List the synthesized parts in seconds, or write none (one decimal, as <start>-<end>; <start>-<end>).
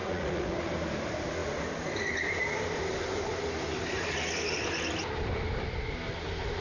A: 0.0-0.7